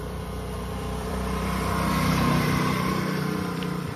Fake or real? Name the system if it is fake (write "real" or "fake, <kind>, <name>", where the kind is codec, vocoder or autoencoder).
fake, vocoder, BigVGAN v2